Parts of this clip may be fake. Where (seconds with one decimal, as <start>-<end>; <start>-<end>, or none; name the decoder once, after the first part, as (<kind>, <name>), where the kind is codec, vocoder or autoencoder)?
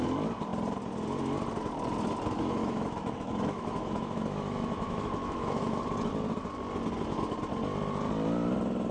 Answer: 2.6-5.8 (autoencoder, DAC-VAE)